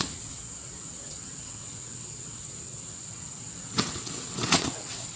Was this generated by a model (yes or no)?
yes